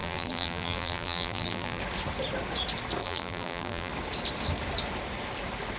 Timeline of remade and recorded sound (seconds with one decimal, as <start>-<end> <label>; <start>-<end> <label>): 0.0-1.8 remade; 1.8-3.0 recorded; 3.0-3.9 remade; 3.9-5.8 recorded